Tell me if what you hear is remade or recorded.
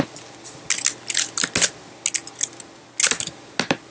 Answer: recorded